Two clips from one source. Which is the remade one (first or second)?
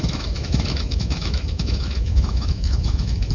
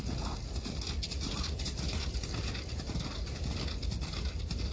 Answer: first